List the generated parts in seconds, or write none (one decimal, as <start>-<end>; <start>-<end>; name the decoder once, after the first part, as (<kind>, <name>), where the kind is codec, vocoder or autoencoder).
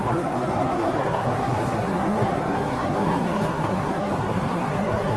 0.0-5.2 (codec, SNAC)